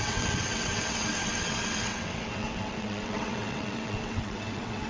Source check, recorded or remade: remade